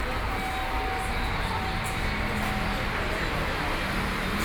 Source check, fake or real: real